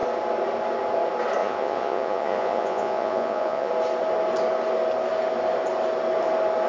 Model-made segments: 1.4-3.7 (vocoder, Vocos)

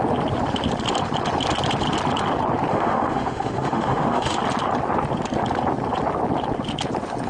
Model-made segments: 2.7-4.4 (autoencoder, DAC-VAE)